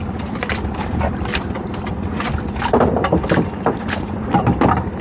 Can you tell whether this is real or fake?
fake